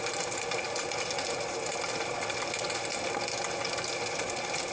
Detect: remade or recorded recorded